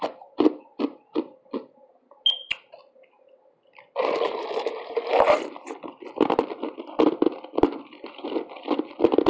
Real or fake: real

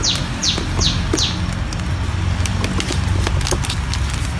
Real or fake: real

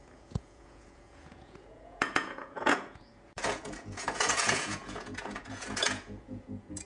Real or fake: fake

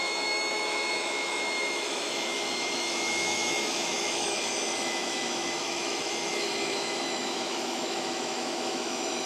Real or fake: fake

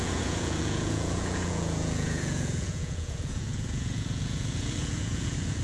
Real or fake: fake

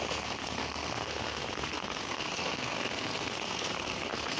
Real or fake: fake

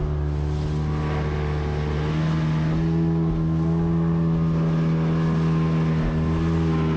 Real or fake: real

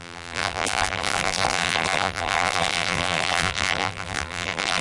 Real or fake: fake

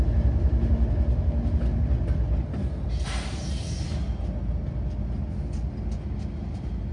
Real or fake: real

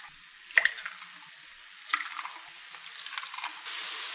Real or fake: real